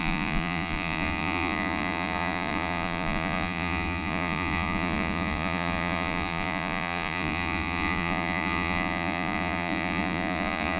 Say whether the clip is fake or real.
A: fake